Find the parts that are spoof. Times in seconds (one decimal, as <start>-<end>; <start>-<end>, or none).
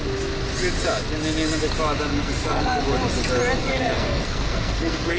2.1-2.8; 3.6-5.2